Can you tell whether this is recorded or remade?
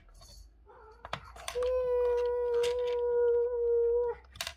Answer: recorded